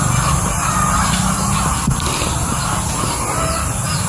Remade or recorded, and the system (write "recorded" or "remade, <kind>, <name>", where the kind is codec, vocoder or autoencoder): recorded